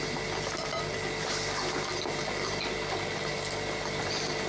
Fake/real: real